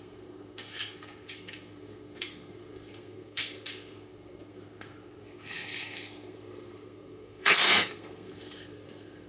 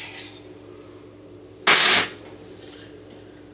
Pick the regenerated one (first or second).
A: first